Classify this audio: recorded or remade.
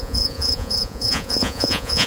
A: remade